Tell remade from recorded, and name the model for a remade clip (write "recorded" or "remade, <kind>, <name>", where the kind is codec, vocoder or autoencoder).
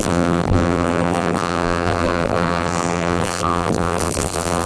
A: remade, vocoder, BigVGAN v2